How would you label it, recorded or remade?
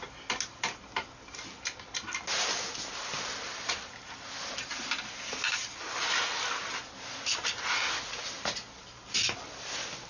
recorded